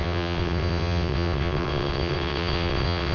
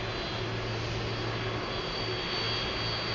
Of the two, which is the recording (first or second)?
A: second